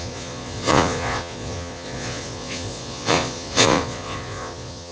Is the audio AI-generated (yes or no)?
yes